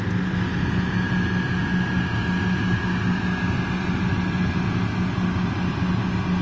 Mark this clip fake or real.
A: real